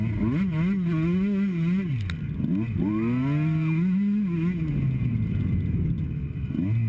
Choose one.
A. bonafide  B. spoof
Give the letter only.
A